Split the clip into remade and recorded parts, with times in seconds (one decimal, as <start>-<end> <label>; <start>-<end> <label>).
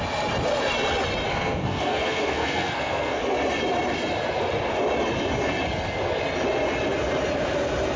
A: 0.0-1.3 recorded; 1.3-3.2 remade; 3.2-8.0 recorded